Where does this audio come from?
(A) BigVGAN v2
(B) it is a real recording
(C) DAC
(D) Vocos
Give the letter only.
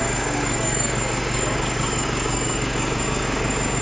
C